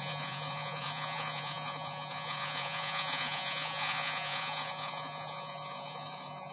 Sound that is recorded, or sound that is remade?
remade